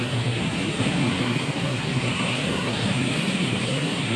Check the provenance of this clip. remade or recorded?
remade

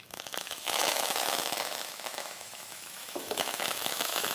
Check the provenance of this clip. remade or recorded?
remade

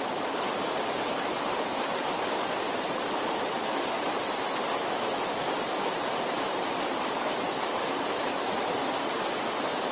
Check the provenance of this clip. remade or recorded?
recorded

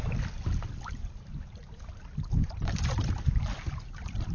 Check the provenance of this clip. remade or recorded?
recorded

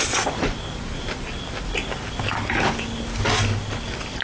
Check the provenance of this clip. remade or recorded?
recorded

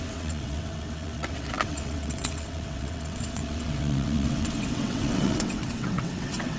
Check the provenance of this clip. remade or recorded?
remade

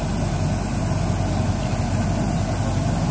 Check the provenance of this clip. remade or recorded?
recorded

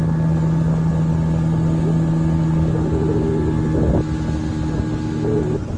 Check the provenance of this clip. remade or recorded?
recorded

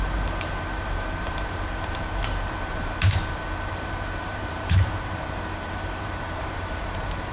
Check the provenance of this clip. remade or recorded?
remade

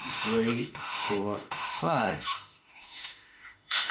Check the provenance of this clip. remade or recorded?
remade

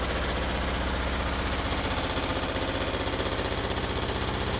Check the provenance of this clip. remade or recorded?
recorded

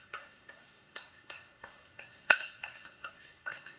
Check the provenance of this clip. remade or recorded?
remade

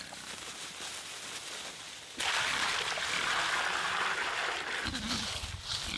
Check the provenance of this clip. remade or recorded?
recorded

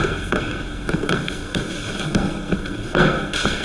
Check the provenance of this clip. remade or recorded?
remade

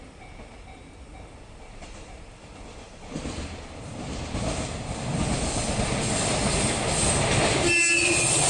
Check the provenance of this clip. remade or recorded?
recorded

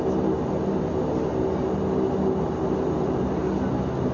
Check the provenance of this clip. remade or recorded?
recorded